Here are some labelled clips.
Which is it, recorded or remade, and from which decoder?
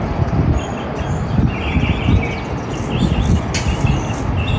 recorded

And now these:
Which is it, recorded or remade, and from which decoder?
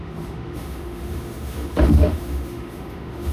remade, autoencoder, DAC-VAE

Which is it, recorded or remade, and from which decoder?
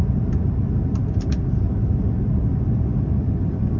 recorded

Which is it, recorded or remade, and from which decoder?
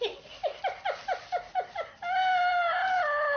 recorded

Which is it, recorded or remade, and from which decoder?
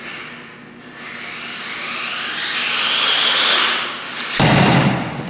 recorded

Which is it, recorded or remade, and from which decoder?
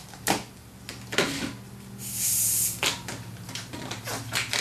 recorded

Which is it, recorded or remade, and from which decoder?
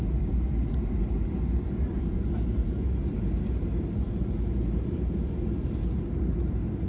remade, vocoder, BigVGAN v2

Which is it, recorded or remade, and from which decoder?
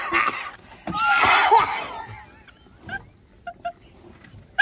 recorded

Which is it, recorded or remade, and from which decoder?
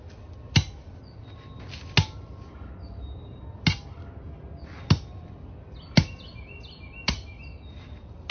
recorded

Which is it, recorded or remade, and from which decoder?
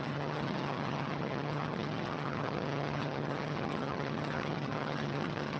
remade, vocoder, HiFi-GAN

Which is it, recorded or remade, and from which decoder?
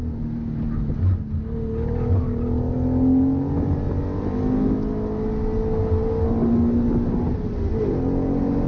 recorded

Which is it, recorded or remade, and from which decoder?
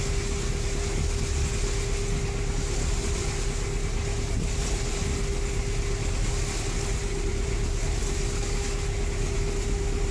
recorded